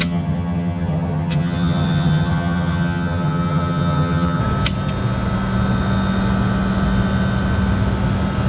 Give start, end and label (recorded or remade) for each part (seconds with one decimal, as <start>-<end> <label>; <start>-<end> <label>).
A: 0.0-4.4 remade; 4.4-8.5 recorded